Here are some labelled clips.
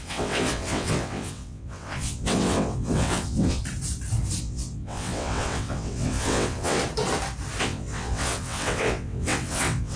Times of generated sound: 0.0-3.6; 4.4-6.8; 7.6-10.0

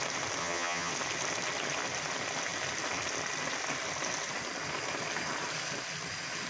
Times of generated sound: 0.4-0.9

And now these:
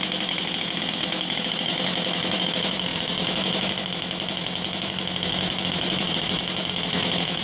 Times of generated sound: 0.0-7.4

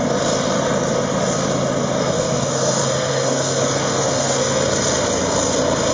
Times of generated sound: 2.0-4.6